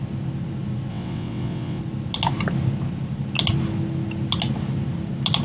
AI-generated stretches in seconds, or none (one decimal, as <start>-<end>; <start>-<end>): 0.9-1.8